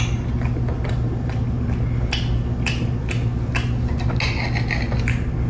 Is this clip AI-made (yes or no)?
no